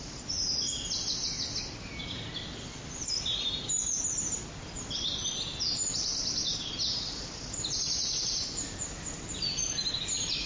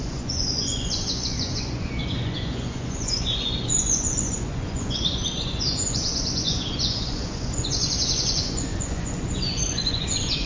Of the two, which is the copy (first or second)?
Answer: second